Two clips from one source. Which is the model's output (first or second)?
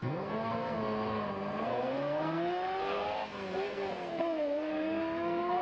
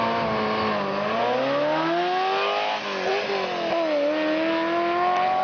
first